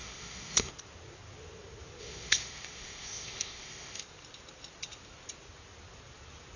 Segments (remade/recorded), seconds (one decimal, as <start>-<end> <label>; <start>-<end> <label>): 0.0-0.7 remade; 0.7-2.0 recorded; 2.0-4.0 remade; 4.0-6.6 recorded